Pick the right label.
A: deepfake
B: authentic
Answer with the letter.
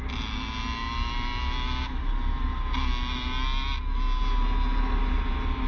B